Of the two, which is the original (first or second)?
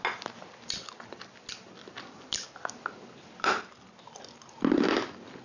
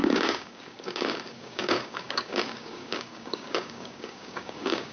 first